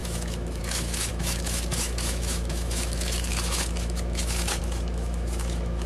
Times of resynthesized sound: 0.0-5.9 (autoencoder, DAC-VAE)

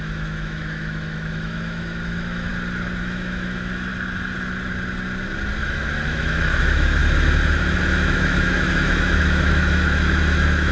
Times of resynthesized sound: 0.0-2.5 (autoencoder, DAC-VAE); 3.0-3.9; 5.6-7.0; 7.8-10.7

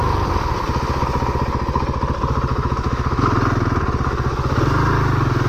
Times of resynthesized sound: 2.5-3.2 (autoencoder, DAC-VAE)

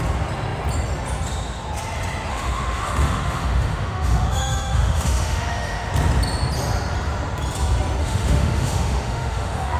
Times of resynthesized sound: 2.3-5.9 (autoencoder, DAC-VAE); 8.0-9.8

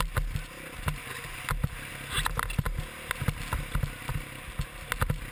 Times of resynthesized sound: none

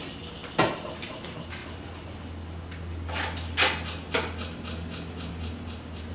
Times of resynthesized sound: none